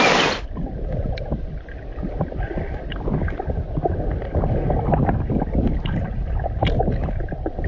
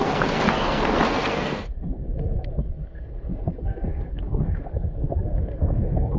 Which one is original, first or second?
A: first